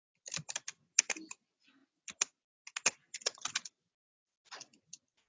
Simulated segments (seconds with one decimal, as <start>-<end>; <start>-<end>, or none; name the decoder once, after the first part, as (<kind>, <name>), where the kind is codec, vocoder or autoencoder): none